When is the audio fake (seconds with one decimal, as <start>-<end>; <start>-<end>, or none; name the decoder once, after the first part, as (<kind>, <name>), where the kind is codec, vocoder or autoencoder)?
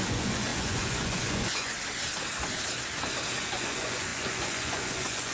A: 0.0-1.7 (vocoder, Vocos); 3.4-5.3